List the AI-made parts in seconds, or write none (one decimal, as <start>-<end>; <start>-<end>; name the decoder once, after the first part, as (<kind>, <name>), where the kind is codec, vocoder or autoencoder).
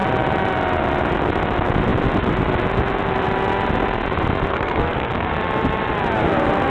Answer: 4.5-5.3 (codec, SNAC)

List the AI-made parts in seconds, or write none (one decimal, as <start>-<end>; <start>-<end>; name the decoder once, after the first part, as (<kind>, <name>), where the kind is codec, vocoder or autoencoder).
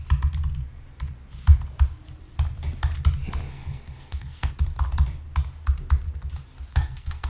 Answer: 3.5-4.5 (codec, SNAC); 6.7-7.3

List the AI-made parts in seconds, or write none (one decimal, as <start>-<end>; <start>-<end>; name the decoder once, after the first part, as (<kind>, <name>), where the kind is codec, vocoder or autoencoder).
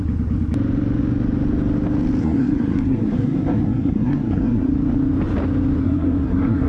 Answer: 2.2-4.7 (codec, SNAC); 5.8-6.7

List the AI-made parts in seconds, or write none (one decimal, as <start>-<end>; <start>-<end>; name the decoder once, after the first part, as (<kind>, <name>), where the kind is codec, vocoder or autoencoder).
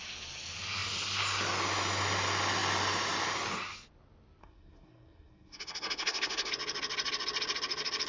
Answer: 4.4-6.5 (codec, SNAC)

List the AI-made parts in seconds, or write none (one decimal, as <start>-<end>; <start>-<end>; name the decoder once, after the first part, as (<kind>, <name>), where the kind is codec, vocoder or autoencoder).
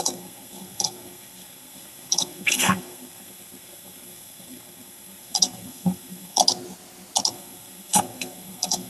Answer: 0.0-6.4 (codec, SNAC); 7.3-8.9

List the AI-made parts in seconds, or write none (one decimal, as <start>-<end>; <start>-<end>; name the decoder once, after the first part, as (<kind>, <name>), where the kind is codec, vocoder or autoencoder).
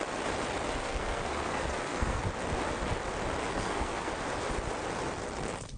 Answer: 0.8-2.2 (codec, SNAC); 3.4-4.1